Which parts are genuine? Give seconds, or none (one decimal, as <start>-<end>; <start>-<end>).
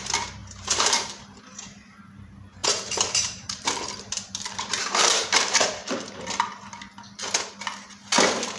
5.8-8.6